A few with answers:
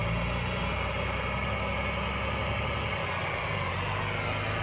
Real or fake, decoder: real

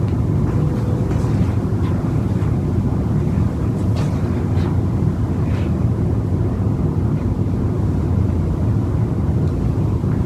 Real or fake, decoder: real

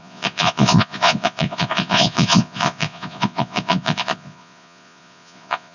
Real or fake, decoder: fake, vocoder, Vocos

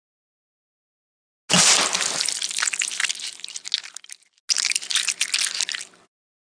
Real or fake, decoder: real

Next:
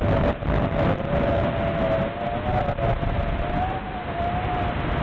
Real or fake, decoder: real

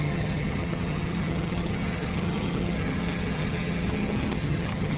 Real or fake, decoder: fake, vocoder, HiFi-GAN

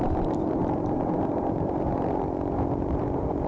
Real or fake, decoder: fake, vocoder, BigVGAN v2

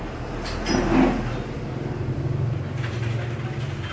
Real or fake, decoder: real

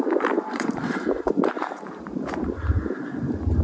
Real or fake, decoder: fake, vocoder, BigVGAN v2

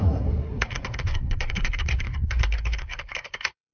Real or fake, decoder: fake, codec, SNAC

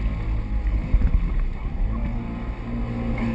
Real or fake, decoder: real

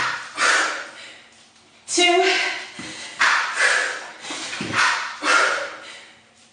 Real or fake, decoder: real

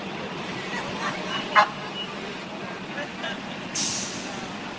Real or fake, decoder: real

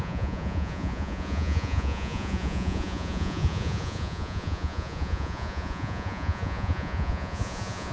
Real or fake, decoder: fake, vocoder, Vocos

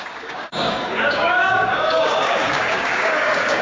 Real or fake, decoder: fake, codec, DAC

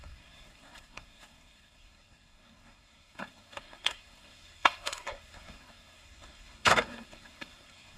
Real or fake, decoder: fake, codec, SNAC